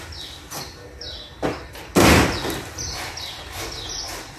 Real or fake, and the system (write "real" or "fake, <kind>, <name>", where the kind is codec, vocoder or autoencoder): real